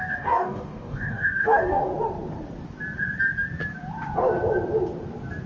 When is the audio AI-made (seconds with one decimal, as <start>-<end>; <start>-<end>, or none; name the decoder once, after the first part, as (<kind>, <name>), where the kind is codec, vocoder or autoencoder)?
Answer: 0.0-1.9 (codec, DAC)